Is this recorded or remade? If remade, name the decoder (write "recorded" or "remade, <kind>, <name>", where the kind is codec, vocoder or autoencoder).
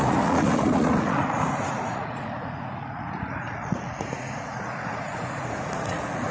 remade, vocoder, Vocos